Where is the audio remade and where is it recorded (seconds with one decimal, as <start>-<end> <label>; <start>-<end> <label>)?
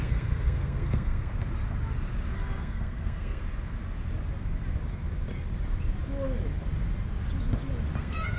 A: 0.0-1.3 remade; 1.3-2.6 recorded; 2.6-3.4 remade; 3.4-8.0 recorded; 8.0-8.4 remade